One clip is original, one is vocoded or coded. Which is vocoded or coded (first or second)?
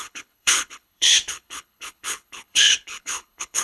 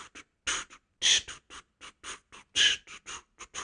first